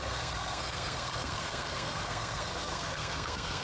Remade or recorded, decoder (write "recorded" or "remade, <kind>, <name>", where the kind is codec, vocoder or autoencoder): remade, codec, SNAC